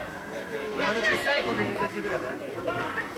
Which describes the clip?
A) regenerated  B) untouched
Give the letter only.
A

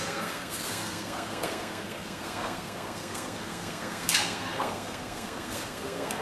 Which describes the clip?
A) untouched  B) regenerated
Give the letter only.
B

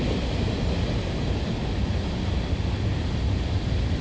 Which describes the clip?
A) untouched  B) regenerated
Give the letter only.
A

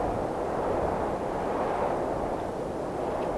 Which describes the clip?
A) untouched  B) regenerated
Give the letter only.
A